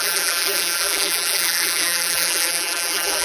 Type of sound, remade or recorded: remade